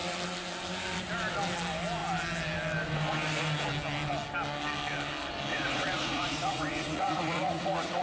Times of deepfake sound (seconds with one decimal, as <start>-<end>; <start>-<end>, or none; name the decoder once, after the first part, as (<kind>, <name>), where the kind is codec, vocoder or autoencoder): 5.5-8.0 (vocoder, Vocos)